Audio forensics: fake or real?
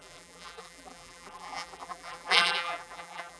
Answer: fake